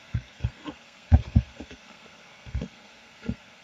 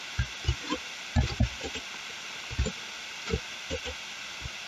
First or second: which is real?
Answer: second